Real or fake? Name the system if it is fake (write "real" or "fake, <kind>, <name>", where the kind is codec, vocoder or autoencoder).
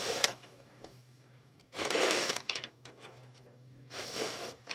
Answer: fake, codec, DAC